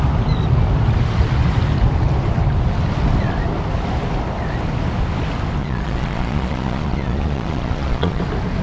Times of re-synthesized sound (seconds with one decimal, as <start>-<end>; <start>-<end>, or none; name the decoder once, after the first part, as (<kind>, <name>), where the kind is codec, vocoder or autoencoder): 5.6-8.2 (vocoder, Vocos)